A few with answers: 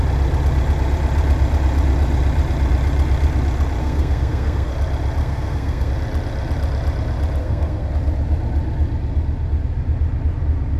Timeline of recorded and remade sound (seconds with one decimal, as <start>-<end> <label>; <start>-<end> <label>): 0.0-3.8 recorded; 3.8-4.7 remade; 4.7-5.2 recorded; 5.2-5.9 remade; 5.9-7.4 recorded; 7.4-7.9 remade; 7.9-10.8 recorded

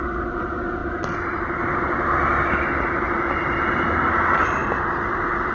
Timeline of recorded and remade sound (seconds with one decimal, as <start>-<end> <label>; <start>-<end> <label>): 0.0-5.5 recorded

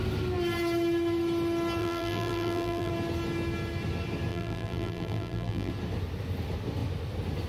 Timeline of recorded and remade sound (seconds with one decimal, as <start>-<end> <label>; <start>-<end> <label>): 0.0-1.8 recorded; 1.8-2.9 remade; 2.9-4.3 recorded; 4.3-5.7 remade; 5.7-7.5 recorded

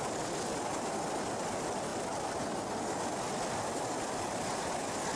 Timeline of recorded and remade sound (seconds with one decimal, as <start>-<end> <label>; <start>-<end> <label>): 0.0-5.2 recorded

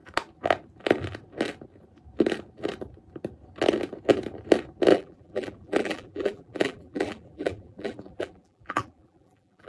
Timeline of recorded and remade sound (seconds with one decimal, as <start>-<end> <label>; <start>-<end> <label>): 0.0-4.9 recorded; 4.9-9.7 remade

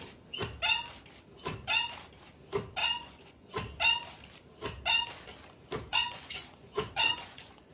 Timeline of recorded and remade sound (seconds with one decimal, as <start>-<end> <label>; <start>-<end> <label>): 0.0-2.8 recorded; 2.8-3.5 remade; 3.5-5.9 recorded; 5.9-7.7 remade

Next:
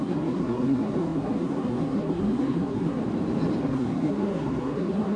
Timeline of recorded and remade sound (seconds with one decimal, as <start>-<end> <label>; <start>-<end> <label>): 0.0-3.0 remade; 3.0-3.6 recorded; 3.6-5.2 remade

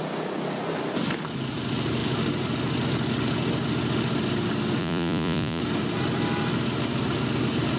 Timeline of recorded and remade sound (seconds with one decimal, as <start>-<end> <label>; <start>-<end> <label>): 0.0-4.8 recorded; 4.8-5.6 remade; 5.6-7.8 recorded